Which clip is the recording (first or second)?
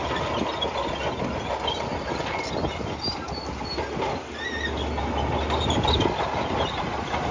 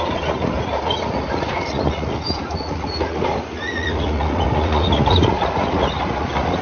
first